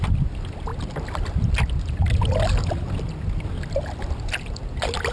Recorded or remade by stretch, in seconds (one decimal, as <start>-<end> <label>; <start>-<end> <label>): 0.0-5.1 recorded

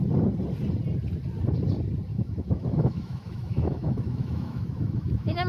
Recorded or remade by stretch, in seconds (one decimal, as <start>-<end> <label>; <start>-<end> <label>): 0.0-2.1 recorded; 2.1-5.5 remade

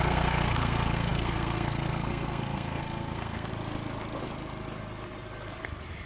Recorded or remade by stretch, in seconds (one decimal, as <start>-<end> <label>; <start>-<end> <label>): 0.0-3.5 remade; 3.5-6.1 recorded